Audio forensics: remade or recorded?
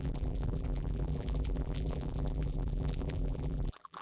remade